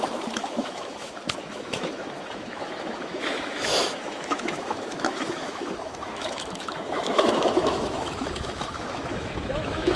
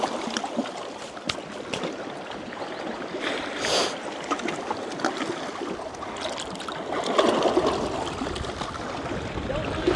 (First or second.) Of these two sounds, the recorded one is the second